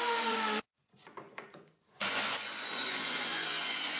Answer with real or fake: fake